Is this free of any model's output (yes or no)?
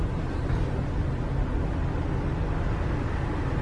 yes